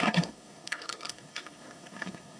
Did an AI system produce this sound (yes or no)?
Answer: yes